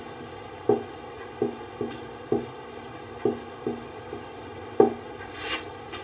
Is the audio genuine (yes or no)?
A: no